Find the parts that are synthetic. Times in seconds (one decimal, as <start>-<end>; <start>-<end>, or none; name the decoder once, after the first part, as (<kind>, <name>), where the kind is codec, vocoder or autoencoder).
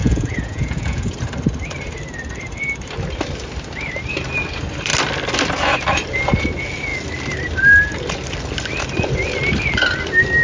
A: 0.0-1.3 (vocoder, Vocos)